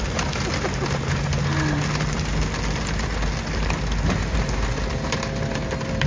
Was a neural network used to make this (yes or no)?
no